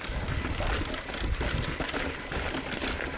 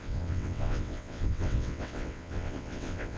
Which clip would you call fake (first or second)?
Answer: second